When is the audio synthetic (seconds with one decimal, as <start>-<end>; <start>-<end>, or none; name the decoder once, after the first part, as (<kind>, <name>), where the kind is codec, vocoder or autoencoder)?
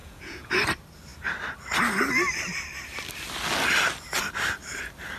0.0-0.5 (vocoder, Vocos)